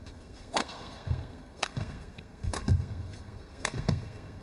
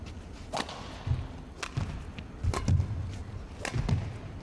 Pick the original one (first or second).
second